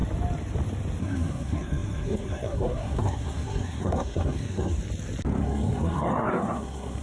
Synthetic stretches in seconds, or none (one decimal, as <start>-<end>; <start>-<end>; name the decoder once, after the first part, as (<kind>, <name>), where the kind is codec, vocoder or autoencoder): 1.0-4.8 (codec, SNAC); 5.4-7.0